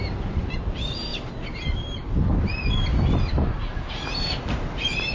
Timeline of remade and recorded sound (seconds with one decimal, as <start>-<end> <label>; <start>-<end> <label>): 0.0-1.1 remade; 1.1-3.9 recorded; 3.9-5.1 remade